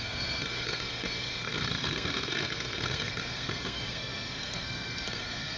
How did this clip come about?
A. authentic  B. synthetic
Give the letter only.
B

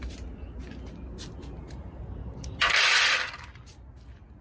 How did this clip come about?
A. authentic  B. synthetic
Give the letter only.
A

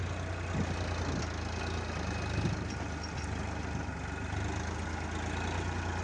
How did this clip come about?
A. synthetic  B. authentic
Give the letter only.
B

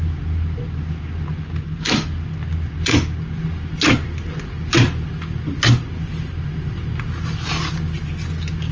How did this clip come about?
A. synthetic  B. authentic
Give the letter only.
B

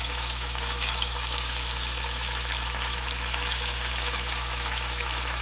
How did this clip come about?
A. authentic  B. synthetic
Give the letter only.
B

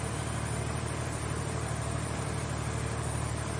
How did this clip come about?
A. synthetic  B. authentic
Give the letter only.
A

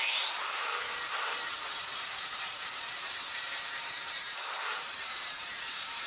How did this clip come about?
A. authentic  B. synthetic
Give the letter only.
B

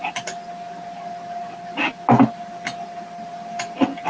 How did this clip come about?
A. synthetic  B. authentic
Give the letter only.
B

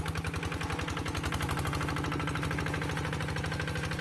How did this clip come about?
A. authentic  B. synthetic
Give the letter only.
A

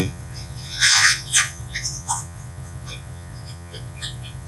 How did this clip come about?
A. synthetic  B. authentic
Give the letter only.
A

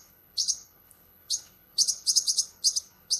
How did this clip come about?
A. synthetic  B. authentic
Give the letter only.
A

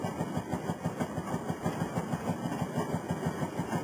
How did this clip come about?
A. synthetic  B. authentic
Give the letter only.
B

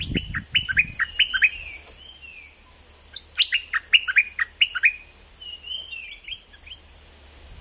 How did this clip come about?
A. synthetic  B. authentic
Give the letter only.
B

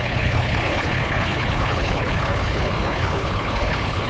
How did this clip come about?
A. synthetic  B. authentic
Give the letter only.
A